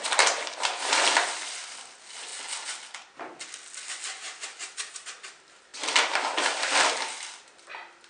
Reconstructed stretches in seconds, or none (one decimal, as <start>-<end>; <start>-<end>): 5.7-6.9